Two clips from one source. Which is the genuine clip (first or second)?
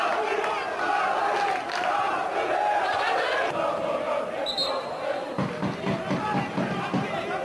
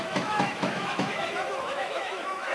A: first